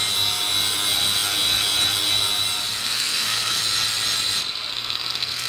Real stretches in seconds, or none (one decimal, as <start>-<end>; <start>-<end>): 0.0-2.8; 3.6-4.7